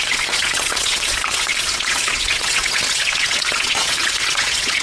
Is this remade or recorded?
remade